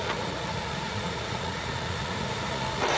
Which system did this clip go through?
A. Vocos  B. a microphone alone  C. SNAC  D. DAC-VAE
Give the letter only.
A